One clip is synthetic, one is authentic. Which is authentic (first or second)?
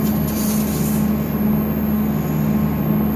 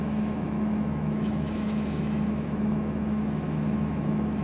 first